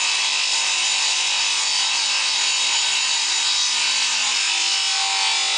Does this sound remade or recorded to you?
recorded